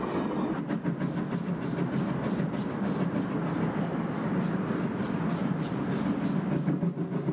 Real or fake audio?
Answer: real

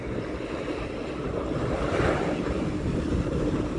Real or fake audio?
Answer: fake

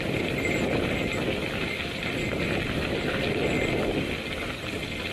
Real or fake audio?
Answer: real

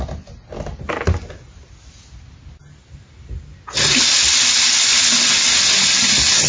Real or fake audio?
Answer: real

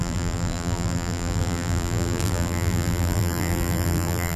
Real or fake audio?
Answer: fake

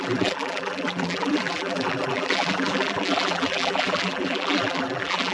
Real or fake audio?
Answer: fake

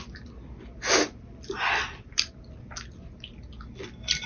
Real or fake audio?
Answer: real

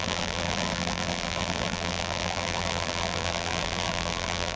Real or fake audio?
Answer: fake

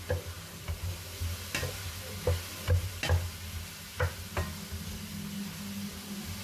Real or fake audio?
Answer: real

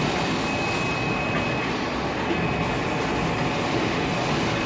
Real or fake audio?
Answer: real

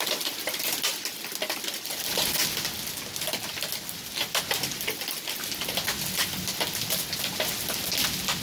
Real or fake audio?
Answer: real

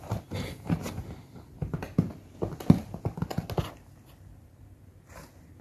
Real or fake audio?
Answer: real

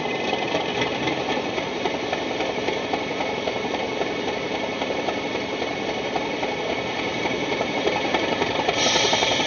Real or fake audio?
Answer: fake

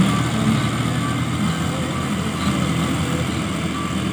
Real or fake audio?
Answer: real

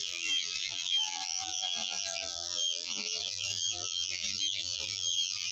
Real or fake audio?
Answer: fake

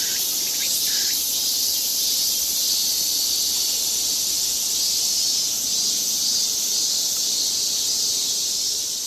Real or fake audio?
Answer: fake